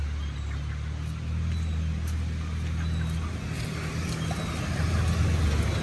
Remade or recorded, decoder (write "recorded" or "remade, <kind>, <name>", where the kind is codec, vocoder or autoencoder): recorded